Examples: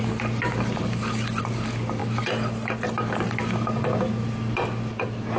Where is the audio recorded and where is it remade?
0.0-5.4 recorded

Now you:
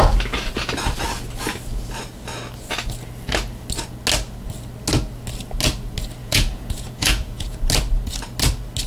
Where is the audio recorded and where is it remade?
0.0-6.2 recorded; 6.2-7.7 remade; 7.7-8.9 recorded

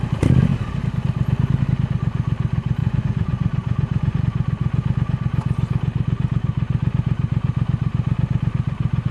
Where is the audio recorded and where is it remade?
0.0-2.8 recorded; 2.8-4.2 remade; 4.2-9.1 recorded

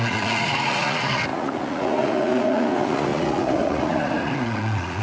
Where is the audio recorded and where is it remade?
0.0-5.0 remade

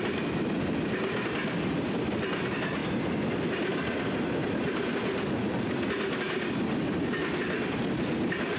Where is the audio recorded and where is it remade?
0.0-8.6 recorded

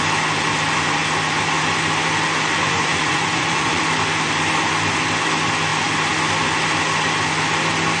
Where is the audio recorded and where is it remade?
0.0-2.6 recorded; 2.6-3.8 remade; 3.8-8.0 recorded

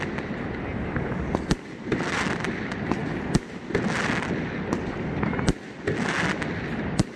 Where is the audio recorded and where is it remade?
0.0-7.2 recorded

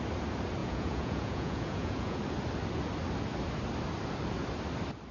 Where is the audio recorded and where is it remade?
0.0-0.6 recorded; 0.6-2.2 remade; 2.2-5.1 recorded